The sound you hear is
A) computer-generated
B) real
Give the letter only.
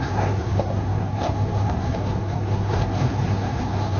A